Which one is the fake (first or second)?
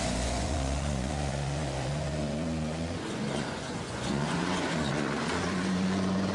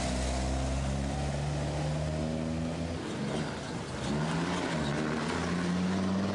first